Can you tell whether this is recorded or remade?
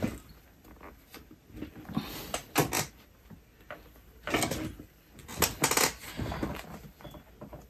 recorded